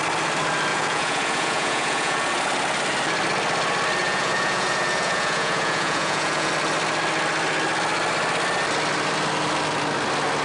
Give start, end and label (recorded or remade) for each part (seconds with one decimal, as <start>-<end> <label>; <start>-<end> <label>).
0.0-0.7 recorded; 0.7-2.3 remade; 2.3-4.0 recorded; 4.0-6.5 remade; 6.5-10.4 recorded